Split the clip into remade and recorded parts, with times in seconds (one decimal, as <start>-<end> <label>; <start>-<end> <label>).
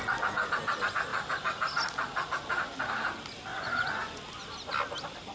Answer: 0.0-3.5 recorded; 3.5-4.2 remade; 4.2-5.3 recorded